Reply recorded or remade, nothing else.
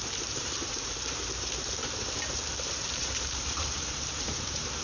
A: remade